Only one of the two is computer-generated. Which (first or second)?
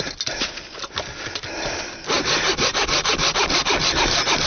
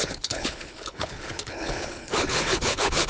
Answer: second